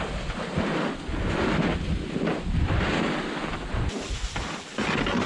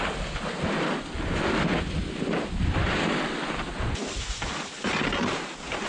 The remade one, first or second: first